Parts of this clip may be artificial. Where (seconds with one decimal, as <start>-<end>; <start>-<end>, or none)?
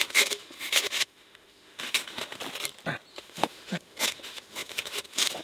0.0-2.4; 3.1-5.4